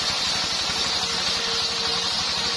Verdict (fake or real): real